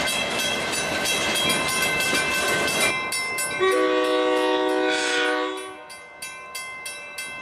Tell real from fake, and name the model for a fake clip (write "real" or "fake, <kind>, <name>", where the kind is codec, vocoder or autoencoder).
real